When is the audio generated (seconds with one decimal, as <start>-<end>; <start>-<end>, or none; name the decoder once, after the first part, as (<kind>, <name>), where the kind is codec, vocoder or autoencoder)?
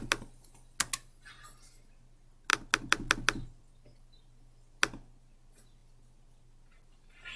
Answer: none